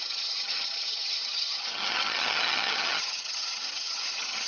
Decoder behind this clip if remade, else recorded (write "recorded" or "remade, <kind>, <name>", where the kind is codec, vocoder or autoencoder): remade, vocoder, HiFi-GAN